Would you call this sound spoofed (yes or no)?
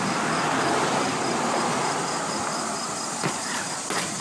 no